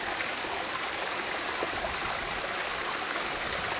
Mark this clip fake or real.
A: real